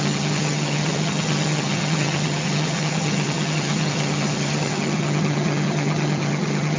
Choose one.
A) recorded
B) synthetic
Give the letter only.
B